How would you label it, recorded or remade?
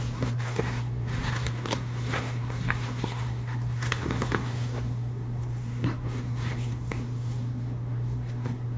remade